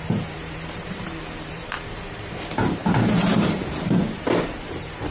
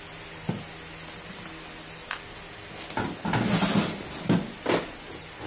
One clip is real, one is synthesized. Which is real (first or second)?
second